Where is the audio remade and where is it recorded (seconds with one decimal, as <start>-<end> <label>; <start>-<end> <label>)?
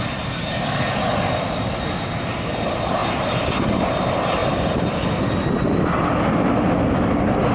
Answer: 0.0-7.5 recorded